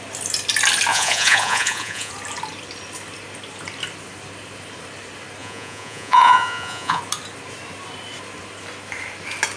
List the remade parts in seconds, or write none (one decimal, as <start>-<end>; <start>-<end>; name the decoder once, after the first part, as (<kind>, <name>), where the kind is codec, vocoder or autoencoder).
0.9-2.1 (vocoder, Vocos); 5.4-7.0